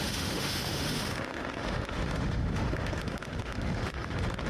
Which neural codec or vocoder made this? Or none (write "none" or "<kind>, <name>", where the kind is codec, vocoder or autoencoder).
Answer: autoencoder, DAC-VAE